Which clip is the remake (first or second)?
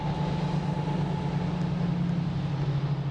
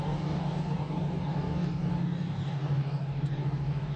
second